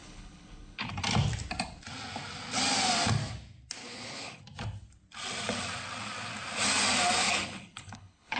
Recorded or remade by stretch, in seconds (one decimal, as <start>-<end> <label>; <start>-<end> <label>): 0.0-0.9 remade; 0.9-3.8 recorded; 3.8-4.4 remade; 4.4-7.2 recorded; 7.2-8.4 remade